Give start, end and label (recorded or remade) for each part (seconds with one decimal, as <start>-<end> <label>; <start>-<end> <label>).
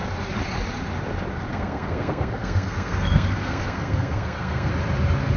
0.0-1.5 recorded; 1.5-4.7 remade; 4.7-5.4 recorded